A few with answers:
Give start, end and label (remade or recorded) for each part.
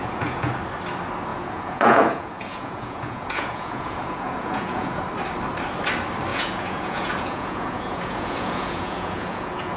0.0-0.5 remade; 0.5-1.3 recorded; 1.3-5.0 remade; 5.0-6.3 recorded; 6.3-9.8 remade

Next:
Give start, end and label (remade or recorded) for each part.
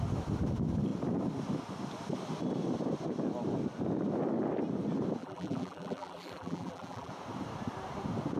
0.0-5.2 recorded; 5.2-7.1 remade; 7.1-8.4 recorded